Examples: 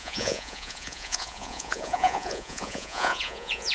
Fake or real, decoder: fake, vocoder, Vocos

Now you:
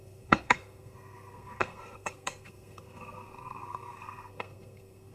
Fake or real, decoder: fake, codec, SNAC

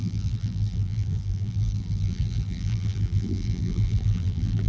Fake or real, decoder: fake, vocoder, BigVGAN v2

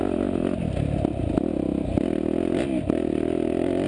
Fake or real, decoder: real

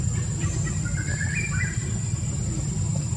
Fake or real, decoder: real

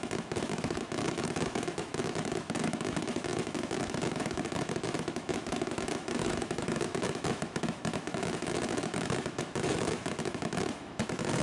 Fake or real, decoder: fake, autoencoder, DAC-VAE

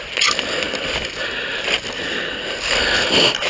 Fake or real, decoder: real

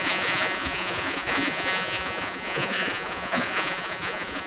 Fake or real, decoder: fake, vocoder, Vocos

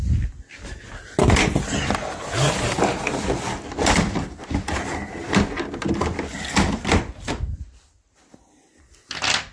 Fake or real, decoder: real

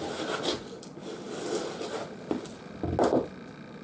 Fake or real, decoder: real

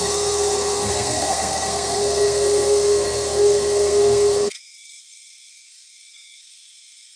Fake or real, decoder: fake, codec, SNAC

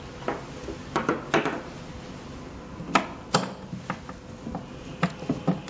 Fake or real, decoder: real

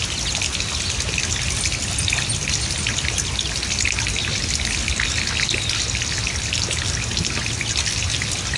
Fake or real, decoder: real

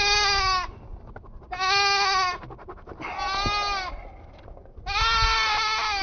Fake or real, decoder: real